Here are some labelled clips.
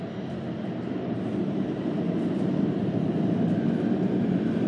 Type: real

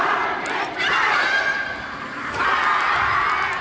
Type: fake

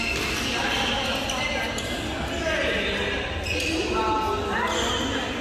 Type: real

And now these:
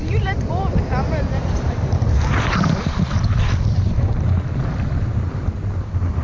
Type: fake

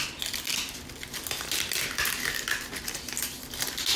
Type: real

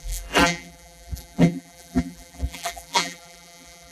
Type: fake